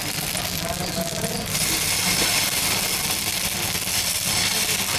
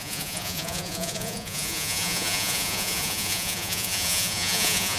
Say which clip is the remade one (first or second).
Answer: second